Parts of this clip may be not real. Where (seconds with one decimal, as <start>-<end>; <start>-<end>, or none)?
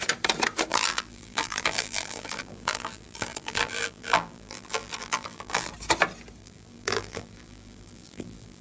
0.7-5.7; 6.4-8.6